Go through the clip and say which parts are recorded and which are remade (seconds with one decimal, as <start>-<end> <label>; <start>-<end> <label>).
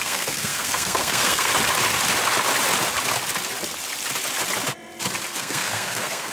0.0-1.5 remade; 1.5-5.3 recorded; 5.3-6.3 remade